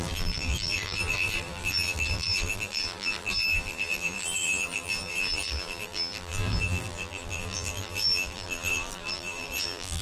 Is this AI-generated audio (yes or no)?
yes